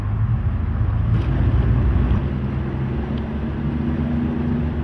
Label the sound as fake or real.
real